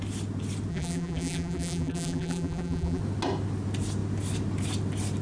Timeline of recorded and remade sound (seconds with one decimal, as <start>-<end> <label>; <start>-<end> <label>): 0.0-0.7 recorded; 0.7-3.0 remade; 3.0-5.2 recorded